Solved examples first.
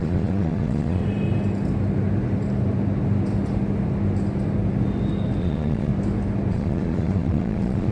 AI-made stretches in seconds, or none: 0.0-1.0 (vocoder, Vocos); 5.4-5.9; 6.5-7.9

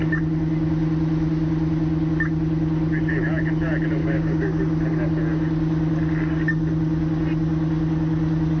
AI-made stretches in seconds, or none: 4.0-4.6 (codec, DAC)

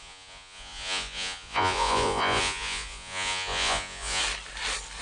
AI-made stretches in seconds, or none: 0.0-4.2 (vocoder, Vocos)

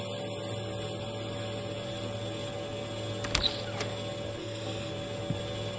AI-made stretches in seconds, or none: 4.4-4.9 (codec, SNAC)

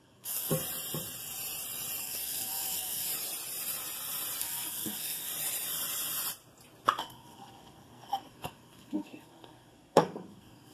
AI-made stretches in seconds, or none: 0.0-0.5 (codec, SNAC); 2.0-3.1; 4.4-5.3; 7.0-10.7

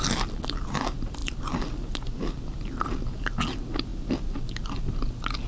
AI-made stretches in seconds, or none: none

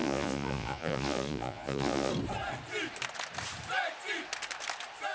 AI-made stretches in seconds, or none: 0.0-2.1 (vocoder, Vocos)

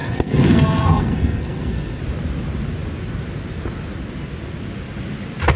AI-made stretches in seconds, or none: 0.0-2.0 (codec, SNAC)